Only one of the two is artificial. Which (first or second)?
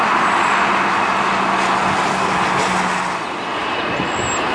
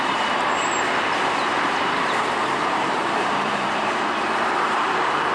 second